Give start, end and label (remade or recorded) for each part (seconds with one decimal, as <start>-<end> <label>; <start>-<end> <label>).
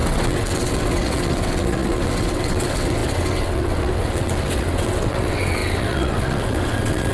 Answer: 0.0-7.1 remade